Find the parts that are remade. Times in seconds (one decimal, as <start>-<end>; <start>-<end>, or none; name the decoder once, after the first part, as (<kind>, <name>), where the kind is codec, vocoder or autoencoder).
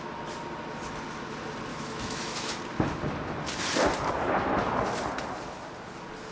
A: 1.7-2.6 (autoencoder, DAC-VAE)